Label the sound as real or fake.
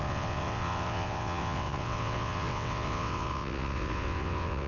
fake